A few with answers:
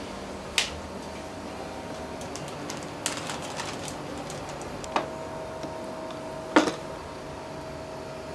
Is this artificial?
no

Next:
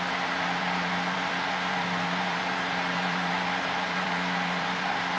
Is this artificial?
yes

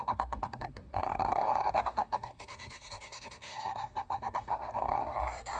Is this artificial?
yes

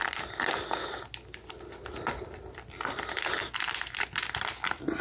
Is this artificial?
no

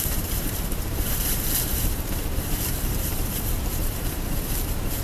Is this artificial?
yes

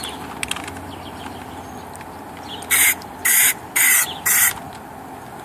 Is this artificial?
yes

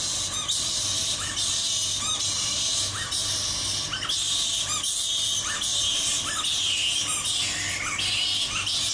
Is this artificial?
no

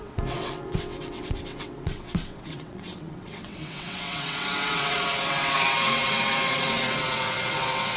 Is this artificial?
yes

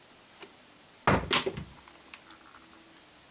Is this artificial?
no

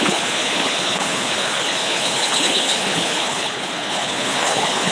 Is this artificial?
yes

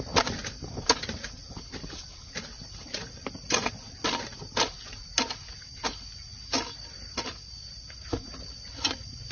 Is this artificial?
no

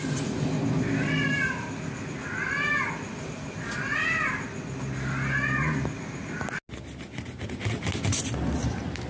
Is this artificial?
no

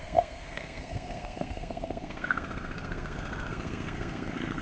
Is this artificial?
yes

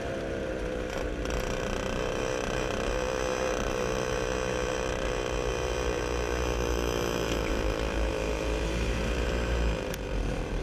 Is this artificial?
yes